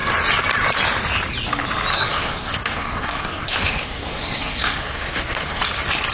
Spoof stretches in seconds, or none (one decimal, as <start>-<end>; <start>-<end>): 1.9-5.6